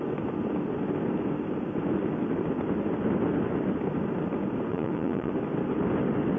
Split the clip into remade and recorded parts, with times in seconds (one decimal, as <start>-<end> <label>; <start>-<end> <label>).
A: 0.0-4.7 recorded; 4.7-5.3 remade; 5.3-6.4 recorded